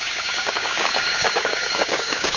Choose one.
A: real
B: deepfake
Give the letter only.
B